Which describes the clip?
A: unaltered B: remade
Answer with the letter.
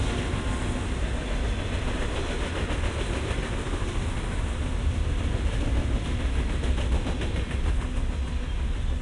A